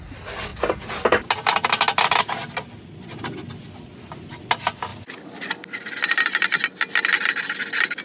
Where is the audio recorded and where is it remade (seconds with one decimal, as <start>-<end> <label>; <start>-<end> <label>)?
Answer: 0.0-8.0 recorded